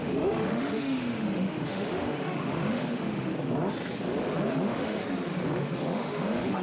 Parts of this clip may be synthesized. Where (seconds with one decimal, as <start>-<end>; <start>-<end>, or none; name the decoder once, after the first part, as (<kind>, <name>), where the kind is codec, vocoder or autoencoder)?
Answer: 0.0-3.3 (autoencoder, DAC-VAE); 4.5-5.0; 5.5-6.6